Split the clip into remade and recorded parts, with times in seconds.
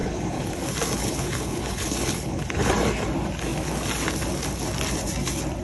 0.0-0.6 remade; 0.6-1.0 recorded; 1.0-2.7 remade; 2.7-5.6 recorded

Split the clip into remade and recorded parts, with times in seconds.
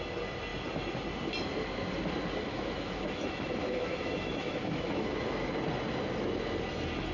0.0-2.5 recorded; 2.5-5.5 remade; 5.5-7.1 recorded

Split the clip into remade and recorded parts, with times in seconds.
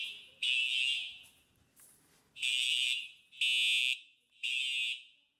0.0-3.2 remade; 3.2-3.8 recorded; 3.8-4.6 remade; 4.6-5.4 recorded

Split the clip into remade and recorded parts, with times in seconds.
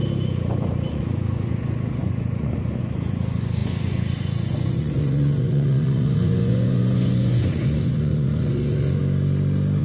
0.0-0.9 recorded; 0.9-9.0 remade; 9.0-9.8 recorded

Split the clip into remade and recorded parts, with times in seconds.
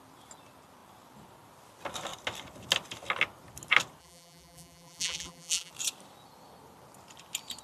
0.0-4.0 recorded; 4.0-5.7 remade; 5.7-7.6 recorded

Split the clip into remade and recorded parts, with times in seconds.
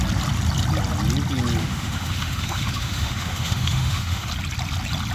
0.0-1.6 recorded; 1.6-4.3 remade; 4.3-5.1 recorded